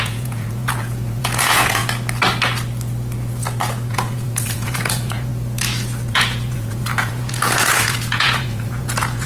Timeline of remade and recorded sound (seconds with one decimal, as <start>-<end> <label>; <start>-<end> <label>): 0.0-1.8 remade; 1.8-3.9 recorded; 3.9-5.3 remade; 5.3-6.1 recorded; 6.1-9.3 remade